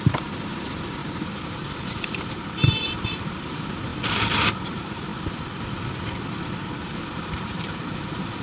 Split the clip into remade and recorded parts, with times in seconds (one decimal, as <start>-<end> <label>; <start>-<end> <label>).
0.0-5.1 remade; 5.1-6.8 recorded; 6.8-8.4 remade